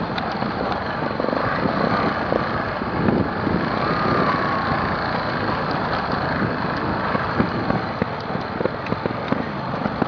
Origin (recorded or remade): recorded